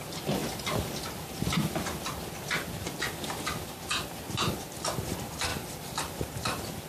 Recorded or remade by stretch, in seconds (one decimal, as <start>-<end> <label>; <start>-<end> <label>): 0.0-6.9 recorded

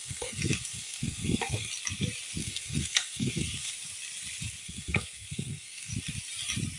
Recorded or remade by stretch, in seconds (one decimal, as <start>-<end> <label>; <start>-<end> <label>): 0.0-1.7 remade; 1.7-2.4 recorded; 2.4-3.7 remade; 3.7-4.6 recorded; 4.6-5.9 remade; 5.9-6.8 recorded

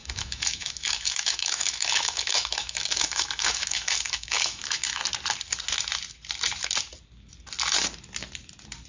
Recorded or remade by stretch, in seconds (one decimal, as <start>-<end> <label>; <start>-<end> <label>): 0.0-5.0 remade; 5.0-8.9 recorded

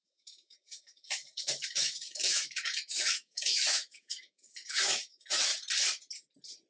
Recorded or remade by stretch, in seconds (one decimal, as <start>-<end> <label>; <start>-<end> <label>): 0.0-5.5 remade; 5.5-6.7 recorded

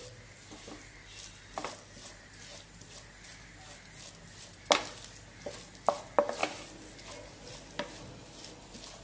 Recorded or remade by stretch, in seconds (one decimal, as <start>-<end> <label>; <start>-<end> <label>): 0.0-9.0 recorded

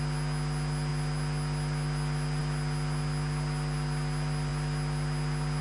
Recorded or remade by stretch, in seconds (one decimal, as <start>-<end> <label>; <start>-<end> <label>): 0.0-5.6 recorded